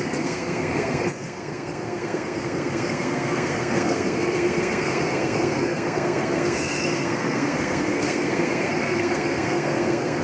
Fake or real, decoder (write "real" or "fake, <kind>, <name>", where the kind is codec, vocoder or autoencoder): fake, codec, SNAC